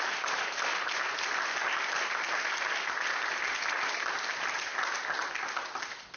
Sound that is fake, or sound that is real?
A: real